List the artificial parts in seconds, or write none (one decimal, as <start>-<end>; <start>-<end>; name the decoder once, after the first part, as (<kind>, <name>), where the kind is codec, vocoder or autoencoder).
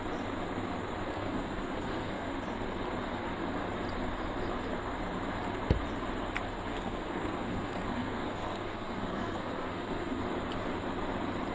1.1-2.3 (codec, SNAC); 6.7-10.2